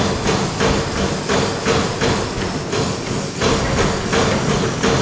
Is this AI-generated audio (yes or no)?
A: no